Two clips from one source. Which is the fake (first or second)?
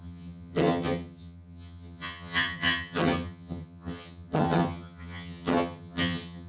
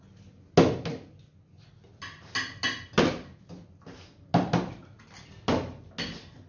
first